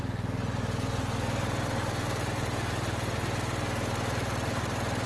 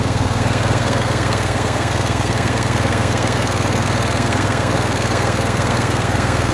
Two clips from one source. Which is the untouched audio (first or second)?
first